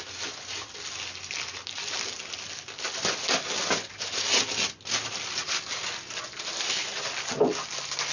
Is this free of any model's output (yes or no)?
yes